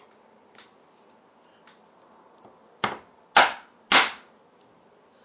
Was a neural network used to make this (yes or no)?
no